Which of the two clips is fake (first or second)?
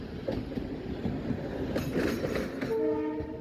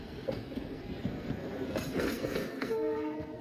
second